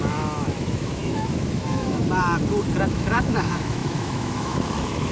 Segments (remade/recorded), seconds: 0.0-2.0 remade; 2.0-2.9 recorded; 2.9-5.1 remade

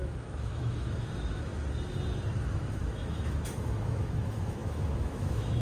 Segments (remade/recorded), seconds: 0.0-1.5 remade; 1.5-2.3 recorded; 2.3-5.6 remade

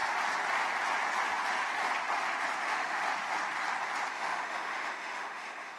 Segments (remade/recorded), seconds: 0.0-2.6 recorded; 2.6-3.0 remade; 3.0-4.1 recorded; 4.1-5.8 remade